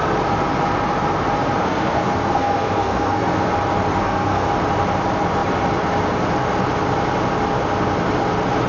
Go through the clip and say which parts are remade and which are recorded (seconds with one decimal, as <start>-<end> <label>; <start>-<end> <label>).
0.0-1.6 recorded; 1.6-3.5 remade; 3.5-4.0 recorded; 4.0-4.5 remade; 4.5-8.7 recorded